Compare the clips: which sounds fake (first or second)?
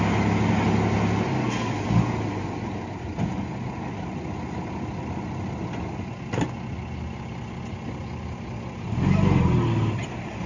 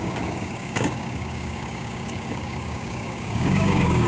second